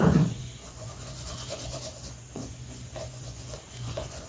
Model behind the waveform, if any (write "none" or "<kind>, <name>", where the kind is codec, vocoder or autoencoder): vocoder, Vocos